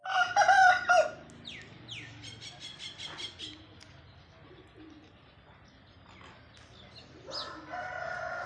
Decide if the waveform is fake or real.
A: real